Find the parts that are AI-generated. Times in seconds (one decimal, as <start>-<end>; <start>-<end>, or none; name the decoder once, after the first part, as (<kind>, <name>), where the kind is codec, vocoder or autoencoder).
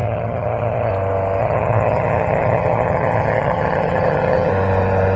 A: 0.0-0.9 (vocoder, HiFi-GAN); 1.4-4.5